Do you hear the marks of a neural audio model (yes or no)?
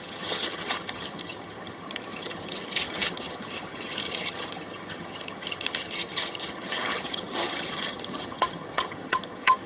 yes